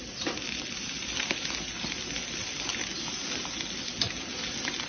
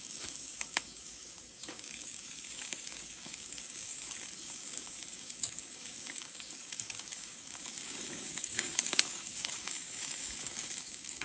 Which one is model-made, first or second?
second